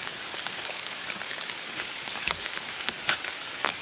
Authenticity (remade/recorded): remade